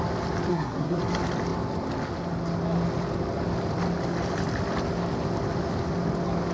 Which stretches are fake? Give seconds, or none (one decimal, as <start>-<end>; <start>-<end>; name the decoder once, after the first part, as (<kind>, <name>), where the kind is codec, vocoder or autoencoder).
0.5-1.0 (codec, SNAC)